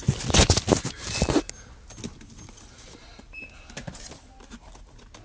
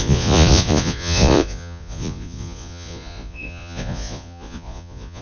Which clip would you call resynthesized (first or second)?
second